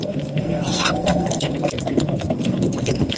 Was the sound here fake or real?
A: fake